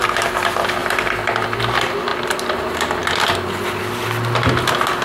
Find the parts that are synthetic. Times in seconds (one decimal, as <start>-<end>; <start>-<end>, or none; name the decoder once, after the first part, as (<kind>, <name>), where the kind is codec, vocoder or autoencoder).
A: 0.8-1.6 (vocoder, BigVGAN v2); 2.1-2.6